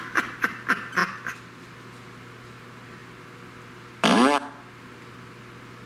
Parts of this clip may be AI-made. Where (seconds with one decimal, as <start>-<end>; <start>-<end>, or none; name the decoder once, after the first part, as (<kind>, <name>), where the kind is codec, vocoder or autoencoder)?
none